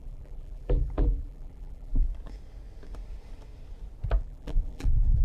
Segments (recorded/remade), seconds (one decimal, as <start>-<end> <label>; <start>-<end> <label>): 0.0-1.9 remade; 1.9-4.2 recorded; 4.2-5.2 remade